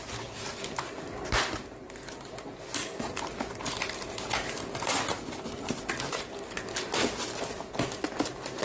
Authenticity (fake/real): real